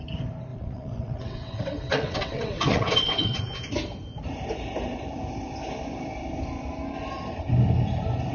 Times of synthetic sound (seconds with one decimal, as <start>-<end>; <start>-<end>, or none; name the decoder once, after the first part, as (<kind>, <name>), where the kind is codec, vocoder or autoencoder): 0.5-3.4 (vocoder, WaveNeXt)